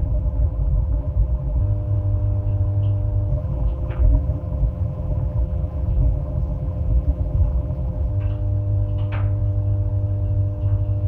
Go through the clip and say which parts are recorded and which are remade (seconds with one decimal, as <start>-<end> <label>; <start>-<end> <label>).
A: 0.0-1.6 remade; 1.6-3.3 recorded; 3.3-8.1 remade; 8.1-11.1 recorded